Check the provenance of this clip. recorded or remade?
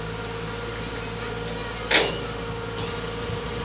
recorded